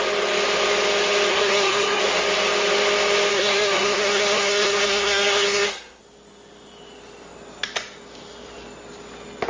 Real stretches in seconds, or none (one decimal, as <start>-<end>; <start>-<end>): 0.0-1.3; 2.0-3.3; 6.0-9.5